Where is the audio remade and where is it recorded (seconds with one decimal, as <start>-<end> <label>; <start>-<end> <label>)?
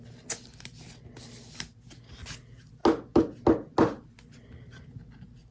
0.0-5.5 recorded